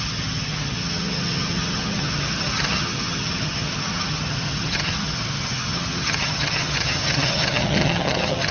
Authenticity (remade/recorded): remade